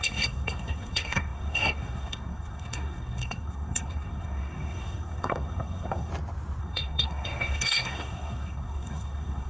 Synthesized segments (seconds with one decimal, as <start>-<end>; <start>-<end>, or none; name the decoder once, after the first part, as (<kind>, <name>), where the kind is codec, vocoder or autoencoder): 0.0-6.1 (codec, SNAC); 6.6-9.5